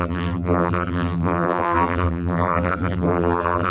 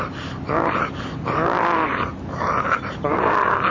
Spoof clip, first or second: first